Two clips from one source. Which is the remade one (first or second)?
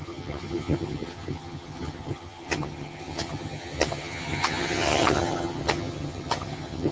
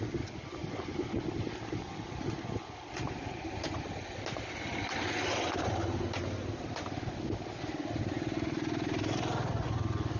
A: first